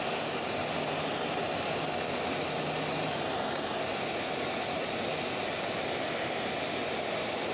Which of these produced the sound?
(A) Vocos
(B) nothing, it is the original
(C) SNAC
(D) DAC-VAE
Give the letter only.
B